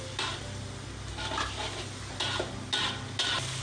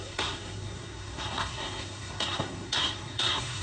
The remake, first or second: second